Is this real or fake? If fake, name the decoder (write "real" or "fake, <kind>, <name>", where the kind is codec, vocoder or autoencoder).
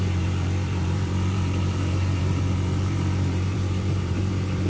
fake, vocoder, BigVGAN v2